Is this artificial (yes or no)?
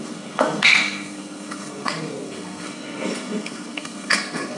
yes